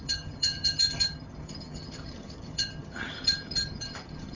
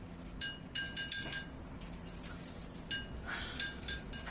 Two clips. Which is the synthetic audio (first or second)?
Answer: first